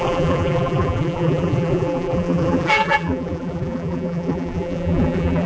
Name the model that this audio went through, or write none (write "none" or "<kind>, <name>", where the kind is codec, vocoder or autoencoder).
vocoder, BigVGAN v2